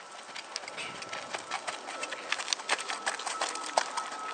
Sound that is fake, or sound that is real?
real